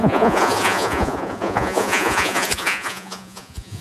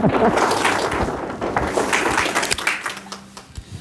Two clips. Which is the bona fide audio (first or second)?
second